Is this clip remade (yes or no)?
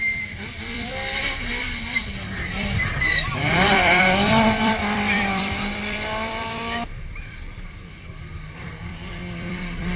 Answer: yes